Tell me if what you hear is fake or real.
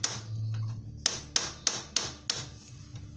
real